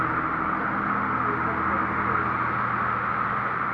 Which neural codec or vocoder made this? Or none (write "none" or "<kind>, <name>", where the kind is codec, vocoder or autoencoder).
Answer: none